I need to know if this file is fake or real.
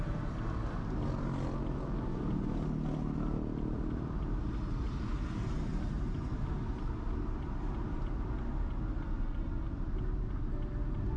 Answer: real